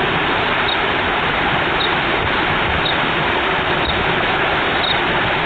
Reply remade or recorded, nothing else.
recorded